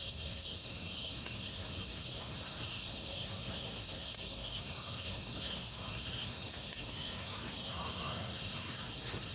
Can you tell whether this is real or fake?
fake